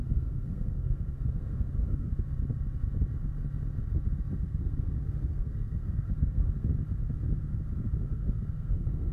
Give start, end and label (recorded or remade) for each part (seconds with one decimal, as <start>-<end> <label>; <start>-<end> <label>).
0.0-2.1 remade; 2.1-4.4 recorded; 4.4-6.7 remade; 6.7-8.1 recorded; 8.1-9.1 remade